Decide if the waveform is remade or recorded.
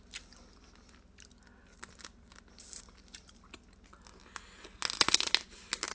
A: recorded